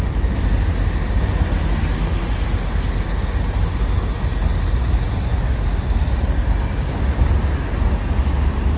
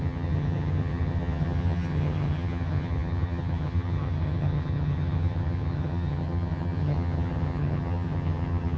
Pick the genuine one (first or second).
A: first